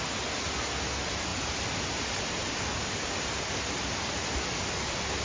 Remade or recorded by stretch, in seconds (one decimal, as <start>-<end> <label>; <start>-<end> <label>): 0.0-5.2 recorded